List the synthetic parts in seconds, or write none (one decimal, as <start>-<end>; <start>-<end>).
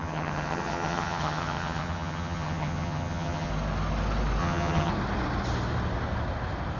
0.0-3.5; 4.4-4.9